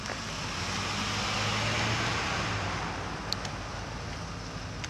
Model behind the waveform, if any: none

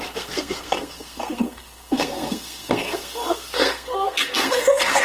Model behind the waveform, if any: codec, SNAC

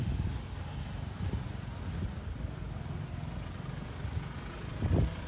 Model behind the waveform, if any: none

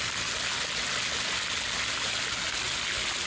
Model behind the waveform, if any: none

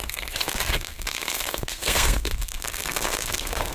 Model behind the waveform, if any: codec, SNAC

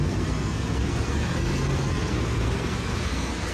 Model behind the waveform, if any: codec, SNAC